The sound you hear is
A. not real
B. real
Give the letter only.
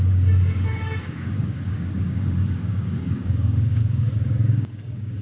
A